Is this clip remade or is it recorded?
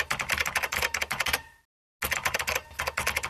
recorded